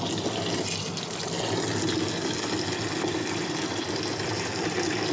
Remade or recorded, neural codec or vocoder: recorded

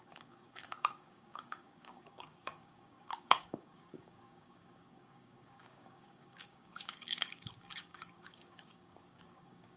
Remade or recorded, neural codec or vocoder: remade, codec, DAC